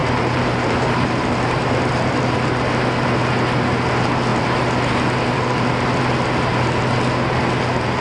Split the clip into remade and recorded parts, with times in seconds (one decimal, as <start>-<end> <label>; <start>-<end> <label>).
0.0-2.2 remade; 2.2-8.0 recorded